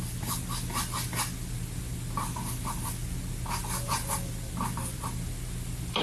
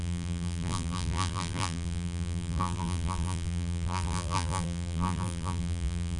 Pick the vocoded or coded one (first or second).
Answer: second